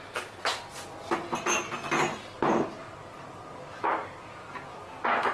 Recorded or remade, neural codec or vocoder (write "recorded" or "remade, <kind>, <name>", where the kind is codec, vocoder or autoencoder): recorded